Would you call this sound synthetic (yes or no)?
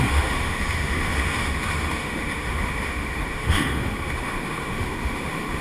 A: yes